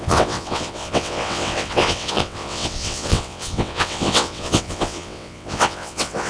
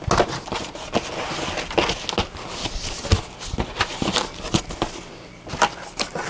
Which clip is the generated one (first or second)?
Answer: first